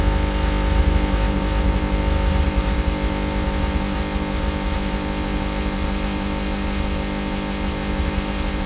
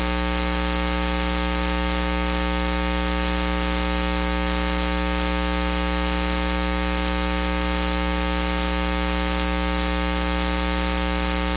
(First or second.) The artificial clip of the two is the first